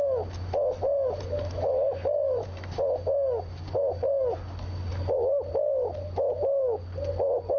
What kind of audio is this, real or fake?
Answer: real